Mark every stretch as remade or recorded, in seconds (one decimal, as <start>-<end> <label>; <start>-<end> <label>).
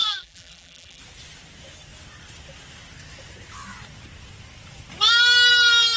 0.0-1.0 remade; 1.0-6.0 recorded